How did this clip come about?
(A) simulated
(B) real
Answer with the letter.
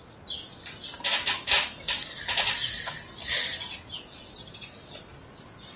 B